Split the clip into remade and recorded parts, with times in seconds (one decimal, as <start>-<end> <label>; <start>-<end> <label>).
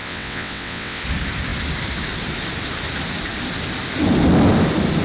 0.0-1.0 remade; 1.0-5.0 recorded